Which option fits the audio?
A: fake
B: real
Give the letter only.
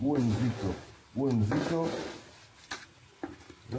B